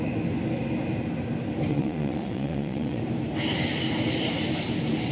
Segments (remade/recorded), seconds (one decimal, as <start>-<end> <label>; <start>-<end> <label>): 0.0-1.7 recorded; 1.7-3.0 remade; 3.0-5.1 recorded